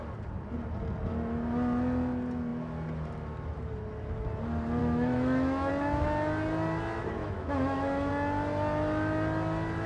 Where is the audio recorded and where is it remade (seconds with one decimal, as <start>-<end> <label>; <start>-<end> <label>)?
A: 0.0-4.8 recorded; 4.8-5.7 remade; 5.7-7.2 recorded; 7.2-8.1 remade; 8.1-9.9 recorded